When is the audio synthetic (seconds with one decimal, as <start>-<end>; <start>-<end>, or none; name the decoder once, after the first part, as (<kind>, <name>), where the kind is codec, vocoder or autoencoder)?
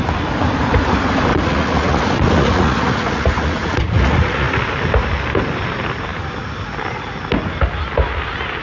1.3-4.6 (vocoder, Vocos)